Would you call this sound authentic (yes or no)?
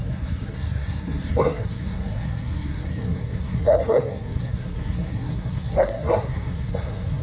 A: no